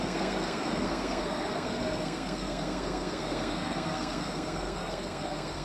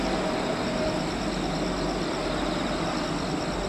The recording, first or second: second